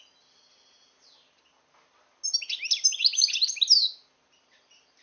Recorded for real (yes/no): yes